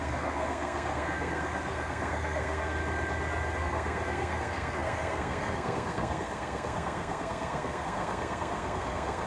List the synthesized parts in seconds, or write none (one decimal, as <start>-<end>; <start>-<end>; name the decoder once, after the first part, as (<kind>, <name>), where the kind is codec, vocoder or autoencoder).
0.0-2.8 (codec, SNAC); 3.6-9.3